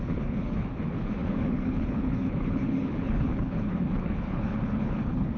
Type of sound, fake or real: fake